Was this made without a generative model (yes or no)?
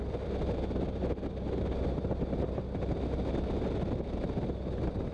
yes